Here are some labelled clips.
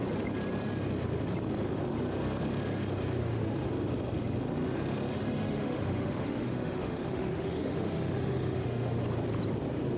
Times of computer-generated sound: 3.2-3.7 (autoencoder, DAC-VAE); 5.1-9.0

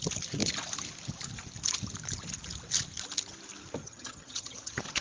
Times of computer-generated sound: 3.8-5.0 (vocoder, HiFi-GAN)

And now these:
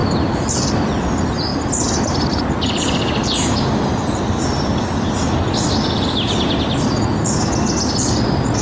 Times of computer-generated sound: none

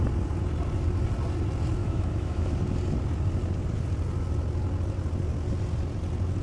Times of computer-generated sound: 1.8-2.5 (autoencoder, DAC-VAE)

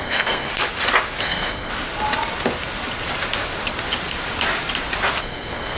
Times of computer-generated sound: 0.0-0.5 (codec, SNAC); 1.2-1.7; 5.2-5.8

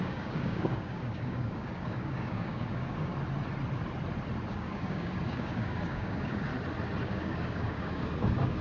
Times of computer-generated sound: 0.0-3.1 (codec, DAC); 4.5-6.5; 7.0-8.6

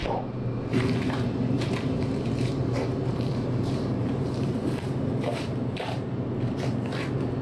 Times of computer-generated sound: 0.0-2.5 (vocoder, BigVGAN v2); 3.0-6.1